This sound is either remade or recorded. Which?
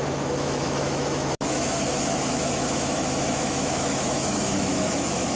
remade